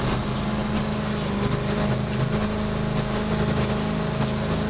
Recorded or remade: recorded